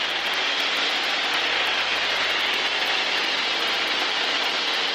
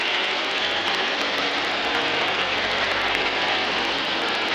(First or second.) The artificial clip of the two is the second